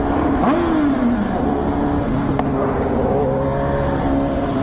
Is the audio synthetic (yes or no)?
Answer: no